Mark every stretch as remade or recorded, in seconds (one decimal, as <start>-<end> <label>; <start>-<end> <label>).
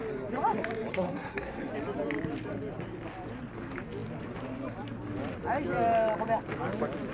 0.0-0.9 recorded; 0.9-1.7 remade; 1.7-7.1 recorded